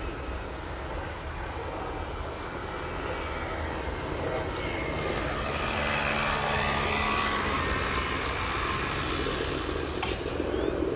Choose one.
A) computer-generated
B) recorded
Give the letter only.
B